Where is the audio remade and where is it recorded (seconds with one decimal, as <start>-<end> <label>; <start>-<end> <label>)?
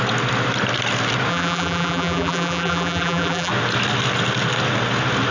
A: 0.0-1.3 recorded; 1.3-3.5 remade; 3.5-5.3 recorded